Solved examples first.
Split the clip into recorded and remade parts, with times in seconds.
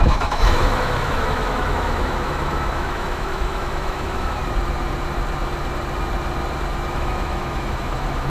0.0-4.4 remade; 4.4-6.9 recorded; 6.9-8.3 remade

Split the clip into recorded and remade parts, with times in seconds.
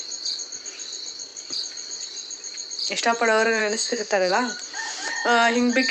0.0-3.6 recorded; 3.6-4.3 remade; 4.3-5.9 recorded